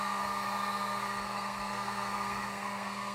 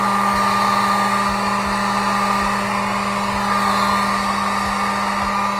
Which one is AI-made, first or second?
first